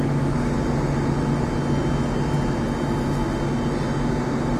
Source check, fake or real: real